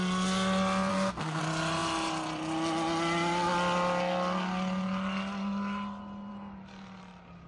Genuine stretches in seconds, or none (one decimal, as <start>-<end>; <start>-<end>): 0.0-0.9; 1.4-7.5